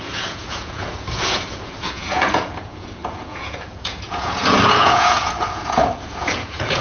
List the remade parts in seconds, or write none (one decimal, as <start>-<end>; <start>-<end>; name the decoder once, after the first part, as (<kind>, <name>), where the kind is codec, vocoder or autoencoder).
0.0-6.8 (vocoder, Vocos)